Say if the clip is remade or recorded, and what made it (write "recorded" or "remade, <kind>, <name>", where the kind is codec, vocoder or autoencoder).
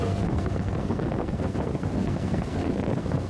remade, codec, SNAC